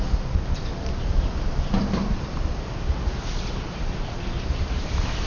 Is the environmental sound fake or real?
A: real